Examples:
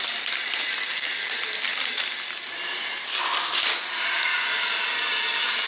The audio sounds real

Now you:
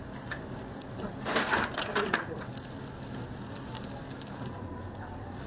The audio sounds real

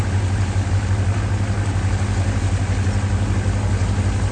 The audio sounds real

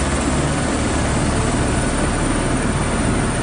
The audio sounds real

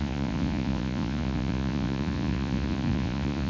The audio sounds fake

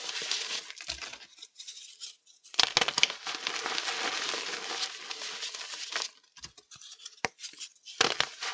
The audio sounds real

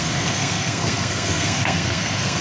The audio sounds fake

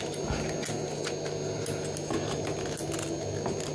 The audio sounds real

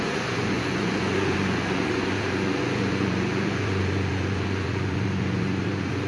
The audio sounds fake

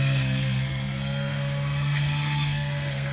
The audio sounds fake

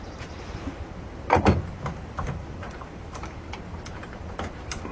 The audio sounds fake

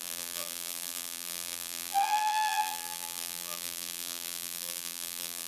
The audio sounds fake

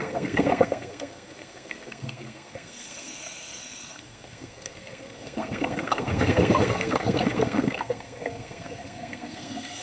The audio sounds fake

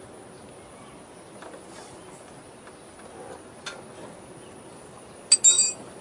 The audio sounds real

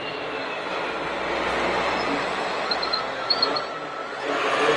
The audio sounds real